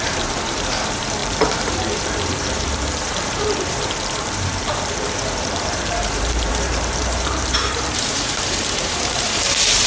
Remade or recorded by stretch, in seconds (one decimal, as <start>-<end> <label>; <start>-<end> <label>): 0.0-9.9 remade